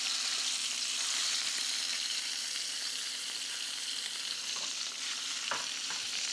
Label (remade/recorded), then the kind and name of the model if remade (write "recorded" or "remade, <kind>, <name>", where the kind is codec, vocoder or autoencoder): remade, vocoder, BigVGAN v2